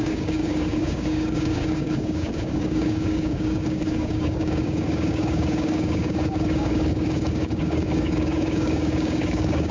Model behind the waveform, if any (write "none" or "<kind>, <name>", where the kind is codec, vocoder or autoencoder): codec, DAC